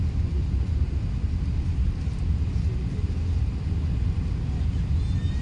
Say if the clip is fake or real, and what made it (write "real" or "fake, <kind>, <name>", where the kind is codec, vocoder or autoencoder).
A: real